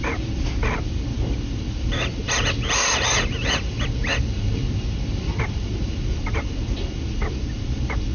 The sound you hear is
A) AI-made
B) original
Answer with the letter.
A